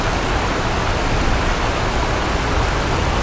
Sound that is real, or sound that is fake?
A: real